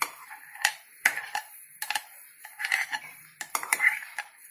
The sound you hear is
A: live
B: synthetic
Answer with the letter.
B